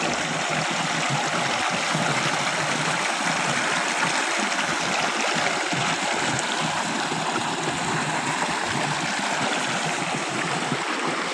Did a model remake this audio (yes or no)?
no